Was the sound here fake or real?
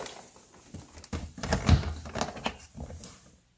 real